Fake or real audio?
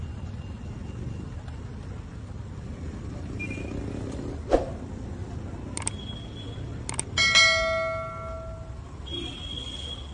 real